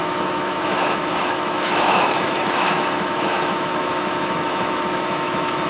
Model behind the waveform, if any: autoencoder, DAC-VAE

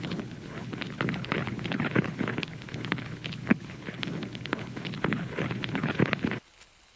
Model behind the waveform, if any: codec, HILCodec